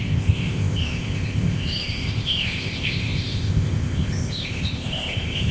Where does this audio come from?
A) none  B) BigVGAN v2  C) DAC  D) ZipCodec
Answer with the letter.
D